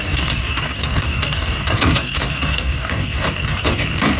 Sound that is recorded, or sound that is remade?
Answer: remade